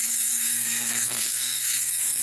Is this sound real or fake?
fake